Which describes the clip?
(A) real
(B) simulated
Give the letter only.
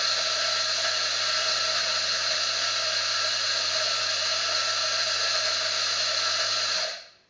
A